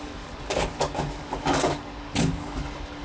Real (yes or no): no